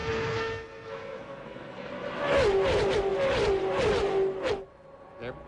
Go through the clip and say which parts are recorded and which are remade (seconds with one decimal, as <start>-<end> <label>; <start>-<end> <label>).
0.0-1.9 remade; 1.9-5.5 recorded